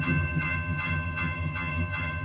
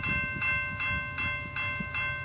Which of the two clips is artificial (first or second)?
first